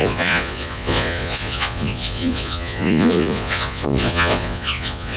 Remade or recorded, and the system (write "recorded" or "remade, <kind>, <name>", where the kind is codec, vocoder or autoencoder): remade, vocoder, Vocos